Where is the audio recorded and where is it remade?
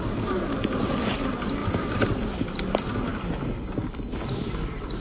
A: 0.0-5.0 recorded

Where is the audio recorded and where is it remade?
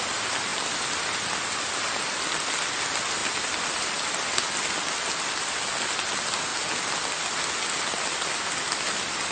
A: 0.0-0.5 recorded; 0.5-1.0 remade; 1.0-3.2 recorded; 3.2-3.9 remade; 3.9-6.5 recorded; 6.5-8.3 remade; 8.3-9.3 recorded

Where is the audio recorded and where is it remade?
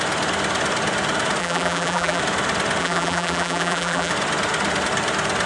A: 0.0-1.4 recorded; 1.4-2.2 remade; 2.2-2.8 recorded; 2.8-4.1 remade; 4.1-5.5 recorded